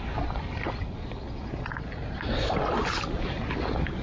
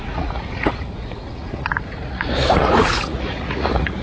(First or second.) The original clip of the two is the first